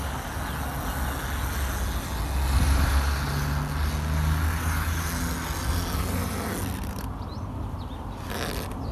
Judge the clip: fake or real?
real